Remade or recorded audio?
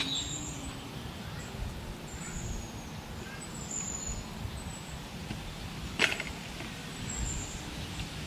recorded